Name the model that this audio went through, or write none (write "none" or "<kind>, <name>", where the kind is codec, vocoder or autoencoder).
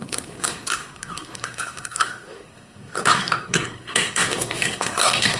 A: codec, SNAC